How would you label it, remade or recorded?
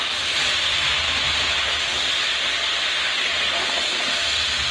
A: recorded